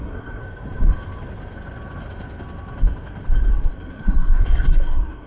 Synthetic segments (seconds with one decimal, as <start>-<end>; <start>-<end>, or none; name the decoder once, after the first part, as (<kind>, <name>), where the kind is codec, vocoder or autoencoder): 0.0-0.4 (codec, SNAC); 3.6-5.3